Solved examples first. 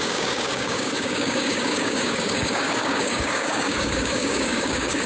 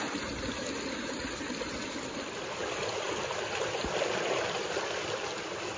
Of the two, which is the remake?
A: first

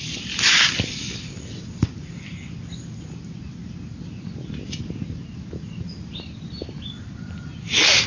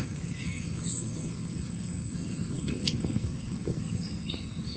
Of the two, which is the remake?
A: second